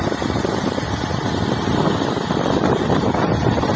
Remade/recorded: recorded